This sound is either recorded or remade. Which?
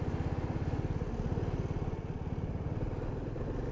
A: recorded